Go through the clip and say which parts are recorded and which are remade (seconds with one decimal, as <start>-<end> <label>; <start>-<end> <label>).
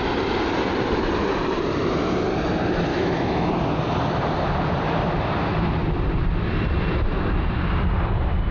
0.0-2.9 recorded; 2.9-3.5 remade; 3.5-8.5 recorded